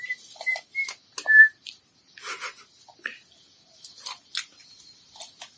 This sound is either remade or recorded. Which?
recorded